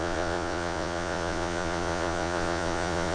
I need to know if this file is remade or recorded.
remade